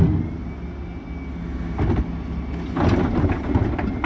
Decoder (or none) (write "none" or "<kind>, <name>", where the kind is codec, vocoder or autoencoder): none